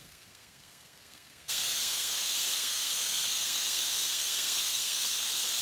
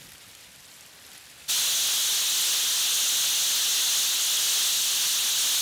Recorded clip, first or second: second